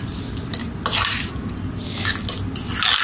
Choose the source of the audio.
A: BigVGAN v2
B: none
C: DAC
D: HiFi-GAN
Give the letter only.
B